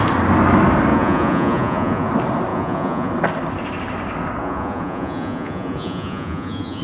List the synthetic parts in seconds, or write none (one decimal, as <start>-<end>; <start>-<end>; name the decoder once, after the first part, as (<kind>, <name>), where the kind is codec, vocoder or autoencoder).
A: 0.9-2.1 (vocoder, Vocos); 2.5-3.1; 4.4-6.8